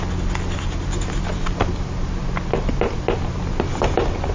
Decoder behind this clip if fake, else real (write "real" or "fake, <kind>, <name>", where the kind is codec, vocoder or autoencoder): real